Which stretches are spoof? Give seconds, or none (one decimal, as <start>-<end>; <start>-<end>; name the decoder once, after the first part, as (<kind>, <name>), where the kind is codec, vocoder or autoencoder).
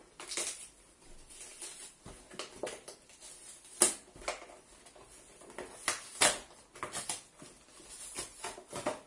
none